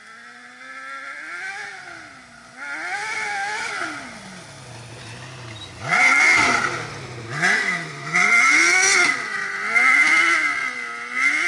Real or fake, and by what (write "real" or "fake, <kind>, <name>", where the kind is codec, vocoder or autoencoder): real